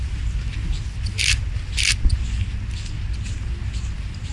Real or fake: real